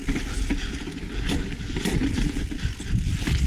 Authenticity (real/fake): real